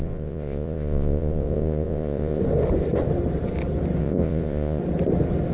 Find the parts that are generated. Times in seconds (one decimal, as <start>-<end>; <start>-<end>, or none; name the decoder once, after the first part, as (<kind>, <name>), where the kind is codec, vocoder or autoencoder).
0.0-2.4 (vocoder, Vocos); 4.0-4.8